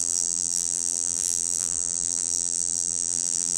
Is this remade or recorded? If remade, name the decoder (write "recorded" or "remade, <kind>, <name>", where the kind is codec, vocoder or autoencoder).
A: remade, vocoder, BigVGAN v2